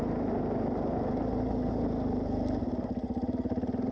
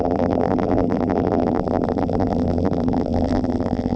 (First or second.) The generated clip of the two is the second